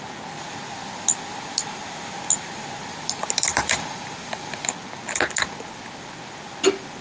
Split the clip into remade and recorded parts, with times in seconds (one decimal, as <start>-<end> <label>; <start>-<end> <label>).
0.0-2.9 recorded; 2.9-5.1 remade; 5.1-7.0 recorded